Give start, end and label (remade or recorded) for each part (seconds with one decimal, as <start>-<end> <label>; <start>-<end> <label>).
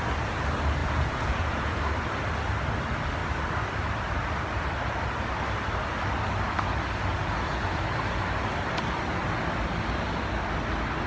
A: 0.0-0.8 recorded; 0.8-1.8 remade; 1.8-7.2 recorded; 7.2-7.8 remade; 7.8-11.1 recorded